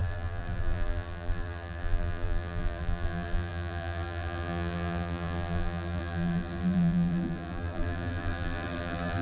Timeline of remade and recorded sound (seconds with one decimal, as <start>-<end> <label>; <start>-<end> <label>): 0.0-9.2 remade